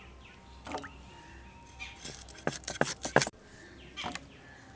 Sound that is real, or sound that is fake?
real